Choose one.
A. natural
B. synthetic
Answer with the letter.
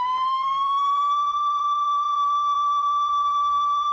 B